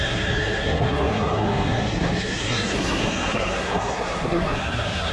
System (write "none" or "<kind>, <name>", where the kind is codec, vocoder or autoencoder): codec, SNAC